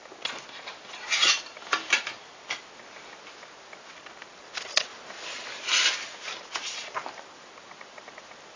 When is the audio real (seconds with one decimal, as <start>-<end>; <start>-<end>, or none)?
0.0-1.2; 2.0-8.6